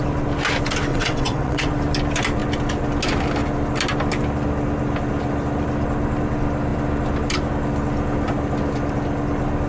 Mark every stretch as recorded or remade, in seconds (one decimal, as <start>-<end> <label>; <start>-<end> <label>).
0.0-0.9 recorded; 0.9-1.7 remade; 1.7-9.7 recorded